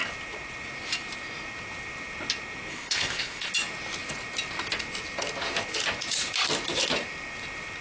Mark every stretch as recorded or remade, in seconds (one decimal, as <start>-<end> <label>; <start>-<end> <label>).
0.0-2.7 recorded; 2.7-3.5 remade; 3.5-7.8 recorded